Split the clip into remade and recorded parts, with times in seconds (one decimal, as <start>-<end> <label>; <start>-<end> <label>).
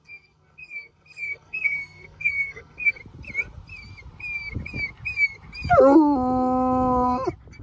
0.0-3.0 remade; 3.0-7.6 recorded